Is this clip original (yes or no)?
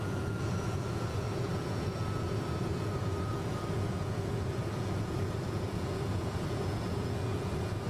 no